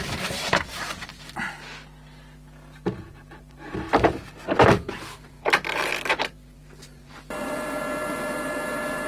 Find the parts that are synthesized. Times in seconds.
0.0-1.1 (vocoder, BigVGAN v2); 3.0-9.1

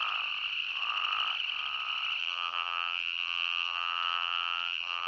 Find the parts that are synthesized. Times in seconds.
2.2-5.1 (vocoder, BigVGAN v2)

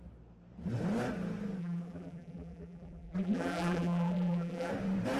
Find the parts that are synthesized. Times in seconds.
1.6-4.7 (vocoder, BigVGAN v2)

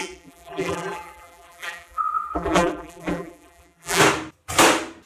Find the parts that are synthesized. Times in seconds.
0.0-4.0 (vocoder, BigVGAN v2)